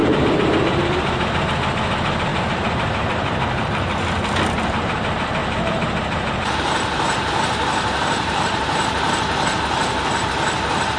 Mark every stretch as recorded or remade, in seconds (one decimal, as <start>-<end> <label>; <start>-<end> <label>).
0.0-0.8 remade; 0.8-2.3 recorded; 2.3-3.9 remade; 3.9-5.4 recorded; 5.4-10.3 remade; 10.3-11.0 recorded

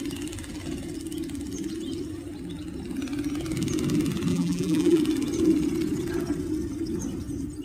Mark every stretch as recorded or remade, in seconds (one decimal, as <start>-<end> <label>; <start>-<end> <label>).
0.0-4.3 recorded; 4.3-5.0 remade; 5.0-7.6 recorded

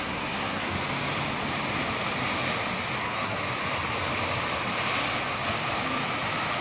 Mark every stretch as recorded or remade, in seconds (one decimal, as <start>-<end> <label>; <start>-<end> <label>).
0.0-0.6 remade; 0.6-3.0 recorded; 3.0-3.4 remade; 3.4-6.6 recorded

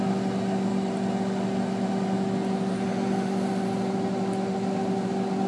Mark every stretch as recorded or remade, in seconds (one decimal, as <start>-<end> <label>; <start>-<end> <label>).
0.0-5.5 recorded

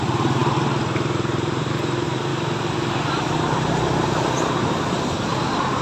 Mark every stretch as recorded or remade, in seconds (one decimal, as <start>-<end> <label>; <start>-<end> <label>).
0.0-5.8 recorded

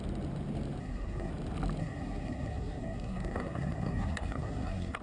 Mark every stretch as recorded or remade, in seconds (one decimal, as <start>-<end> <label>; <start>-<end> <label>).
0.0-0.8 recorded; 0.8-1.3 remade; 1.3-1.8 recorded; 1.8-5.0 remade

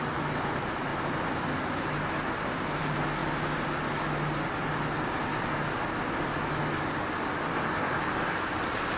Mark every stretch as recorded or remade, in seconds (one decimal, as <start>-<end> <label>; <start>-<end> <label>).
0.0-9.0 recorded